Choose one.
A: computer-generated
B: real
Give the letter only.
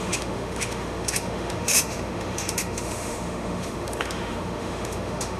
A